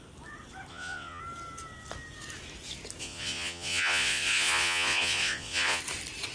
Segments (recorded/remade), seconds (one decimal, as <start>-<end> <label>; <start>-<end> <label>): 0.0-0.7 recorded; 0.7-1.2 remade; 1.2-3.0 recorded; 3.0-5.8 remade; 5.8-6.3 recorded